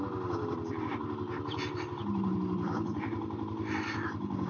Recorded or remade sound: recorded